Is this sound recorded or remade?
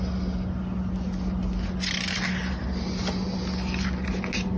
recorded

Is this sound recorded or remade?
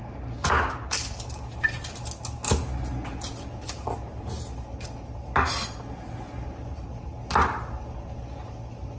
recorded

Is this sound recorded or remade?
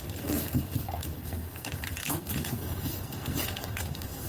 remade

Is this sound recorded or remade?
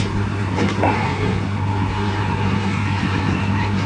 remade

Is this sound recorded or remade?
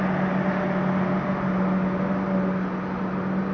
recorded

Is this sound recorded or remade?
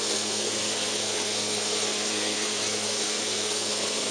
remade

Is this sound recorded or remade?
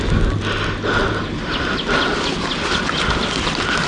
recorded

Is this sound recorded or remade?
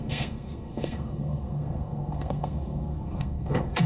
remade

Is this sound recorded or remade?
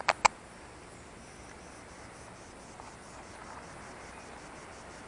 recorded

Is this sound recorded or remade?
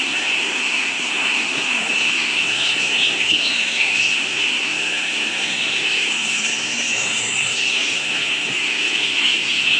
remade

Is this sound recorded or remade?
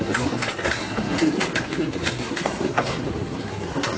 remade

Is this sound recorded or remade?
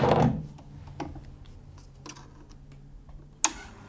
recorded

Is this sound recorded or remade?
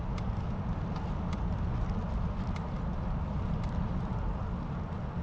recorded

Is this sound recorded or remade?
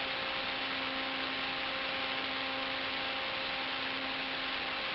recorded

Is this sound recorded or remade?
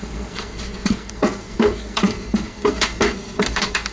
remade